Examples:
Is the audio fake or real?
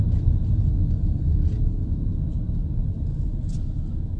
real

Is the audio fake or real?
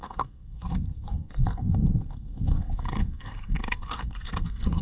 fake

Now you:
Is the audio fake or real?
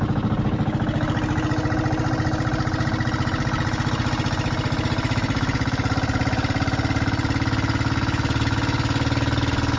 real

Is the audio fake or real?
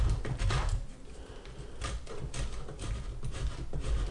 real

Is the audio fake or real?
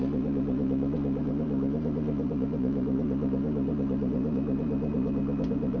fake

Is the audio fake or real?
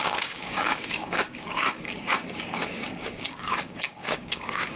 fake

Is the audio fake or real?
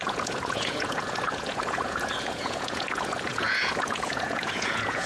fake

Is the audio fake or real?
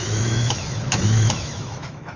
fake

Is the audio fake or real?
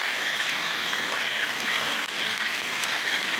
fake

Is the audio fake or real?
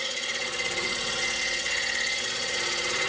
fake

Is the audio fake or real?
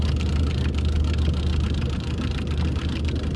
real